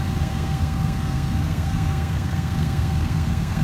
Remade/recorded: remade